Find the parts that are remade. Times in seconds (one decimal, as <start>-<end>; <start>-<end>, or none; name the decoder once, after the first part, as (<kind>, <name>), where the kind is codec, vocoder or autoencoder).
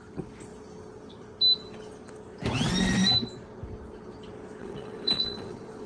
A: 4.6-5.9 (vocoder, WaveNeXt)